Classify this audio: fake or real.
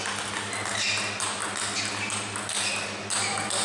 real